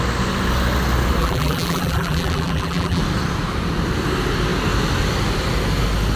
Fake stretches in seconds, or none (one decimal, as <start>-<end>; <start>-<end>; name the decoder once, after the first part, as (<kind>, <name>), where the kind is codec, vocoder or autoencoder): 1.2-3.0 (vocoder, BigVGAN v2)